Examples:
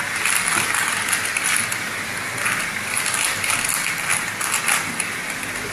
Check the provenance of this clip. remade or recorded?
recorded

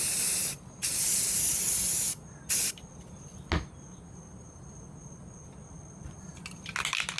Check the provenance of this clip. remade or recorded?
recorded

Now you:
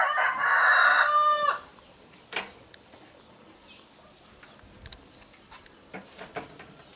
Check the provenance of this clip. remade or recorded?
recorded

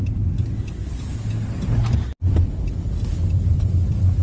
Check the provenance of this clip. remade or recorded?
recorded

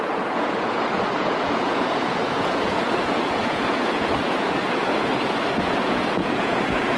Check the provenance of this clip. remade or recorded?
remade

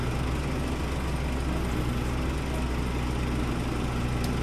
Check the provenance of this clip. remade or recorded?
recorded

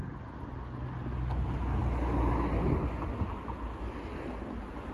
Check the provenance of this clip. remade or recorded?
recorded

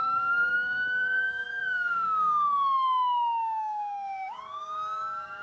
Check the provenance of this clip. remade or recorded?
remade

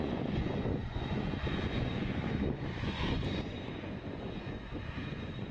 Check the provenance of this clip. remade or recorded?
remade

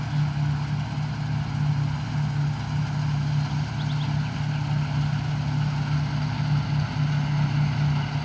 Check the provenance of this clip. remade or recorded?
recorded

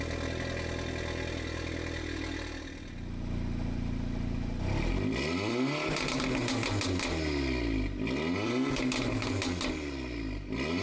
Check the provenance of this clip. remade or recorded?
recorded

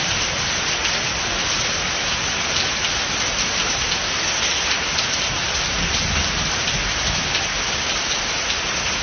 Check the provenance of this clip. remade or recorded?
recorded